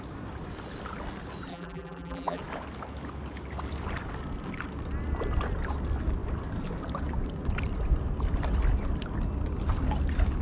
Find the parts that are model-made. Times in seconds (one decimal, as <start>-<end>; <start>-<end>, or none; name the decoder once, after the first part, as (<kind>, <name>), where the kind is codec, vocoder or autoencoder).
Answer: 1.5-2.4 (vocoder, BigVGAN v2)